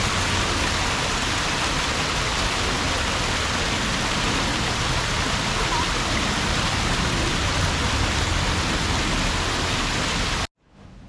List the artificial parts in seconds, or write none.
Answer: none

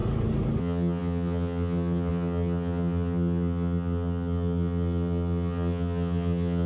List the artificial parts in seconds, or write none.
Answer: 0.6-6.7 (vocoder, HiFi-GAN)

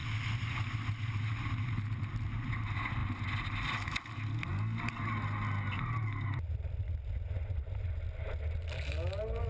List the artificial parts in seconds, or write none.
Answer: none

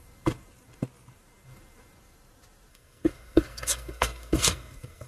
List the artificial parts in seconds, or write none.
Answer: 2.7-5.1 (codec, SNAC)